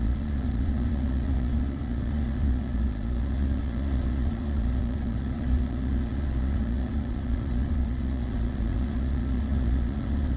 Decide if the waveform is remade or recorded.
remade